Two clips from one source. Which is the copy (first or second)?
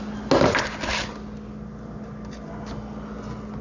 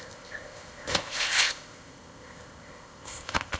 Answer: second